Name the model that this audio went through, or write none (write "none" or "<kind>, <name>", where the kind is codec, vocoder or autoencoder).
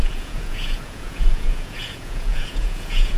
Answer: vocoder, Vocos